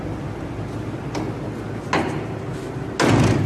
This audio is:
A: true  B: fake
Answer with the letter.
A